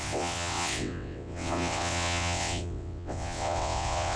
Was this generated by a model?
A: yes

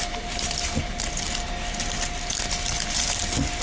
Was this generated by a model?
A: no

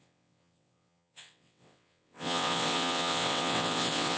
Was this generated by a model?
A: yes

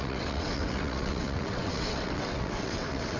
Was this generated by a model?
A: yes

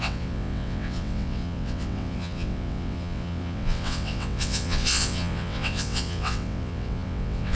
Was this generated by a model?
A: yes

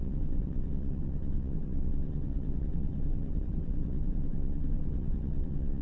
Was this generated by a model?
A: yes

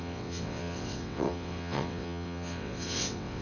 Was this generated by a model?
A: yes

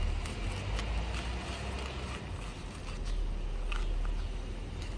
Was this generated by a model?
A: no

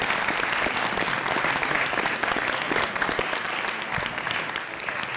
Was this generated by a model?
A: no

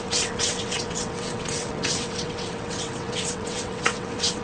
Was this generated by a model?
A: yes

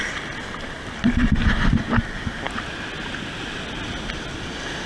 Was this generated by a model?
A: no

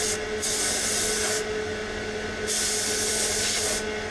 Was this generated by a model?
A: no